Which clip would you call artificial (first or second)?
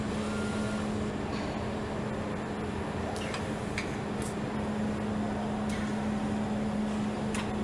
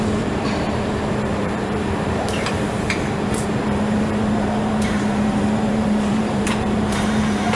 second